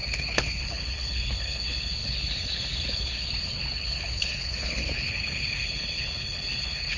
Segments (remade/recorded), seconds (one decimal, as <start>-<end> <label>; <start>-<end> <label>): 0.0-7.0 remade